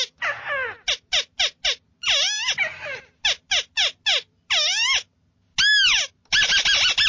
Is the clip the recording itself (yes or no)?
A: yes